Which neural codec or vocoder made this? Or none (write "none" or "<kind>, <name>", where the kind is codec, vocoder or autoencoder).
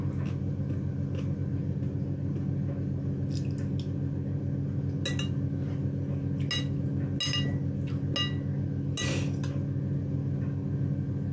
none